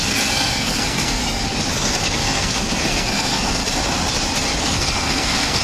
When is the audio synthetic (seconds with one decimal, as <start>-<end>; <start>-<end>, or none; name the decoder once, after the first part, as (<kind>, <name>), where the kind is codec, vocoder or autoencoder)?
0.0-1.2 (codec, SNAC); 1.7-3.6; 4.6-5.6